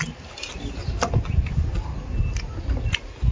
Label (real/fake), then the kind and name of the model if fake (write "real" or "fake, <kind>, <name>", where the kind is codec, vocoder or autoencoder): real